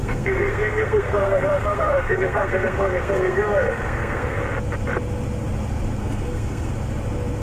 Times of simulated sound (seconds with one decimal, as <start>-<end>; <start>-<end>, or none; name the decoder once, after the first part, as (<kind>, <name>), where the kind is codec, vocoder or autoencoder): 0.0-4.4 (codec, SNAC); 6.0-6.7